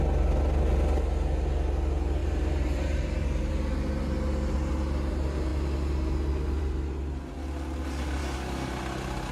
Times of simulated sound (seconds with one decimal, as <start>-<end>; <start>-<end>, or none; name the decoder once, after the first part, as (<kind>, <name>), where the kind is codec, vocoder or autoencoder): 2.2-3.5 (vocoder, BigVGAN v2)